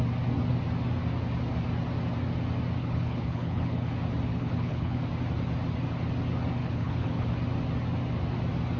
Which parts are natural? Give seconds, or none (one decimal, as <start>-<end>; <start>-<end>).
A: 0.0-2.8; 3.9-4.3; 5.0-6.6; 7.3-8.8